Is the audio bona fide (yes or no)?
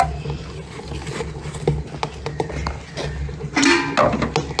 yes